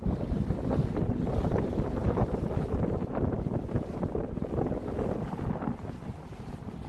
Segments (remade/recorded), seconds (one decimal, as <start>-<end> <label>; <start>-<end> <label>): 0.0-6.9 recorded